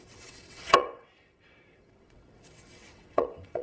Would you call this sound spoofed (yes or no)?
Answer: yes